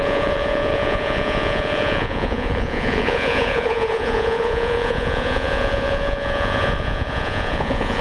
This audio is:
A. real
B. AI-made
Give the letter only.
B